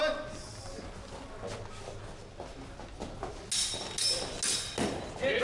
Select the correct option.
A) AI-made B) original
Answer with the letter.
B